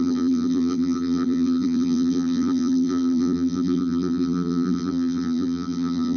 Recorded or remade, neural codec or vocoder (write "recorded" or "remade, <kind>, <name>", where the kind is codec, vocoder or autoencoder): remade, vocoder, BigVGAN v2